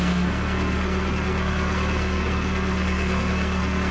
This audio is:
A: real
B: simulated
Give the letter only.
B